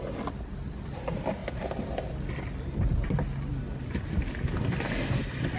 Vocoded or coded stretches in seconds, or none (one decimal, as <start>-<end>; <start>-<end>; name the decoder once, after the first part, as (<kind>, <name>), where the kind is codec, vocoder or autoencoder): none